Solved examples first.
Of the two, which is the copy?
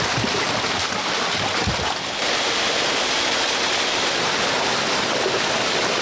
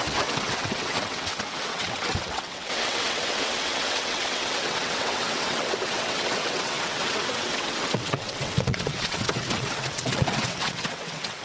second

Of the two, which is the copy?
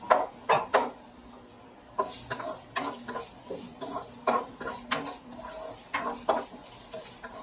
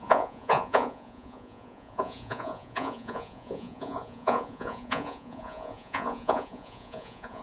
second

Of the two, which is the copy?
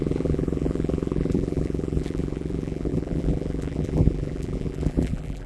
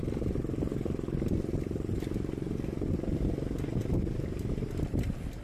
first